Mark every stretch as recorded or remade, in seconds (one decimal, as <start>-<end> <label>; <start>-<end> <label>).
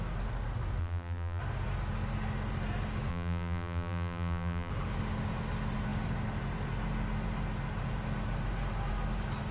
0.0-0.8 recorded; 0.8-1.4 remade; 1.4-3.1 recorded; 3.1-4.7 remade; 4.7-9.5 recorded